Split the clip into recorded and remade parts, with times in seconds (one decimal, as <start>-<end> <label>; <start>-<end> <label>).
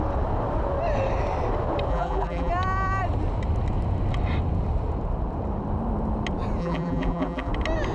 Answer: 0.0-1.9 recorded; 1.9-2.5 remade; 2.5-6.6 recorded; 6.6-7.5 remade; 7.5-7.9 recorded